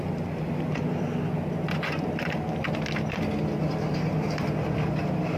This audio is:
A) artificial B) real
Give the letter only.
B